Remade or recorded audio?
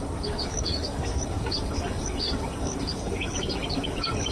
remade